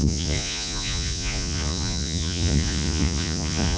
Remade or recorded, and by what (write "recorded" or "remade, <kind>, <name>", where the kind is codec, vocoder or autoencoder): remade, vocoder, Vocos